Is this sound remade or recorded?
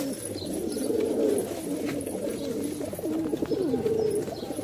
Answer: recorded